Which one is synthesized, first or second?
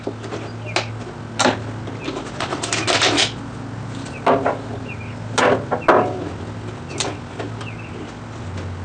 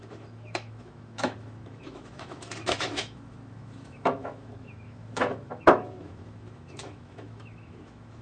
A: second